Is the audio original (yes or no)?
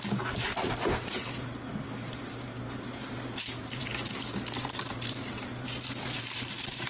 no